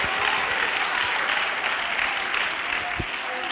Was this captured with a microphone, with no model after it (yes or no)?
no